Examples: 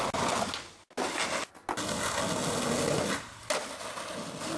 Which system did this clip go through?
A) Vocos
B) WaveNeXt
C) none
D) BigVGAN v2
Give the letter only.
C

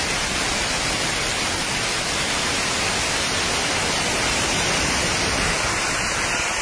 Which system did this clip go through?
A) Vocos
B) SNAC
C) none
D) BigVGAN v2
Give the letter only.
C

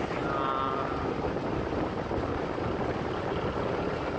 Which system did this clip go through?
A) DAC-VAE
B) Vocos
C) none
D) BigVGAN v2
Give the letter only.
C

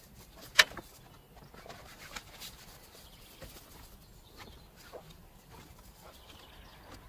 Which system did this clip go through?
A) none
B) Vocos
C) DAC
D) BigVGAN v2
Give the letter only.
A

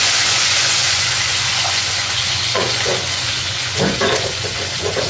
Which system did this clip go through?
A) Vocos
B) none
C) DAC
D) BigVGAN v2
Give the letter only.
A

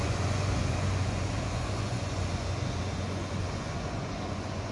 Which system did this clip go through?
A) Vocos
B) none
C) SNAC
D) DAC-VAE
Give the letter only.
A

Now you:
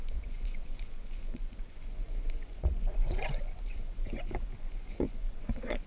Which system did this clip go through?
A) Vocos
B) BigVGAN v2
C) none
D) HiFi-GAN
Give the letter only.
A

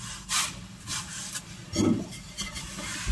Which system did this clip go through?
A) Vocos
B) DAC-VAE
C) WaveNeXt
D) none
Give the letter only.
D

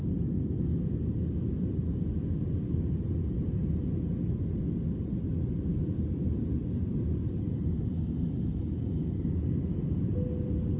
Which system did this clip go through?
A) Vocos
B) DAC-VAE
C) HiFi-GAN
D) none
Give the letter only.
D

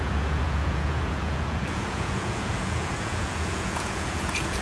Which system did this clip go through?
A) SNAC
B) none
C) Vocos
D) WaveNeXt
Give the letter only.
C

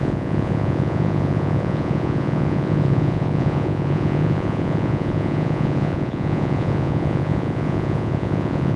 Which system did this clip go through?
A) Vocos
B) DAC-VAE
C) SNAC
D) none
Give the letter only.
A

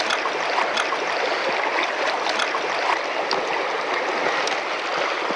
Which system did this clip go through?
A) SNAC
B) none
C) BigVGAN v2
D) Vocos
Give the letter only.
B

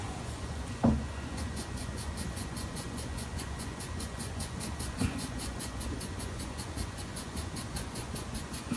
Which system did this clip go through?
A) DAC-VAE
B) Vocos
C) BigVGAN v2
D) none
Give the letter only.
B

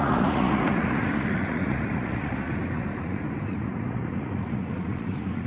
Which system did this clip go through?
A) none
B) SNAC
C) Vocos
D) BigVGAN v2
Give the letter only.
C